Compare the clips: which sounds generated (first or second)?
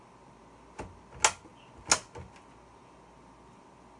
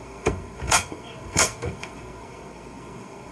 second